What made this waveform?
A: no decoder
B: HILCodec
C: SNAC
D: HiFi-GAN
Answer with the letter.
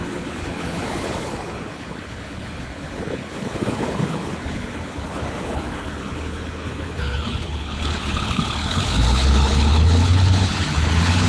B